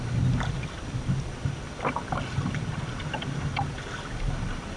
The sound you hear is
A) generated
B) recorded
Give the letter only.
B